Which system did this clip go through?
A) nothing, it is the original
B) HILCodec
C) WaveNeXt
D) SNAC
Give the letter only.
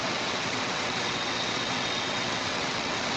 C